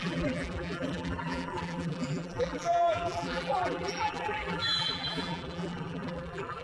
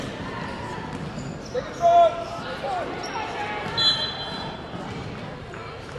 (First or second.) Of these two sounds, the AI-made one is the first